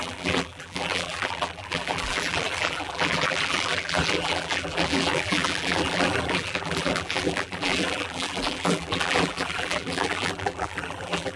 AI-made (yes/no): yes